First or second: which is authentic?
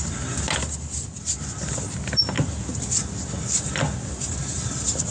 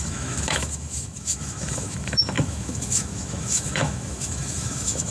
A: first